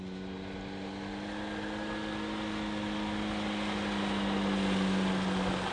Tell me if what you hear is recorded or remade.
recorded